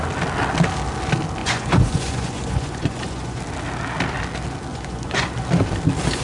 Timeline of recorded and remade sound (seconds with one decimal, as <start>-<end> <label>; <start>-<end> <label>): 0.0-1.4 recorded; 1.4-3.4 remade; 3.4-4.7 recorded; 4.7-5.3 remade; 5.3-6.2 recorded